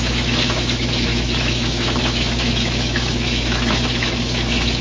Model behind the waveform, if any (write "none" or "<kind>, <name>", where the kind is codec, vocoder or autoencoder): autoencoder, DAC-VAE